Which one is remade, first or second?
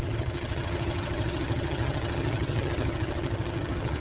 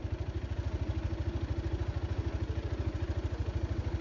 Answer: first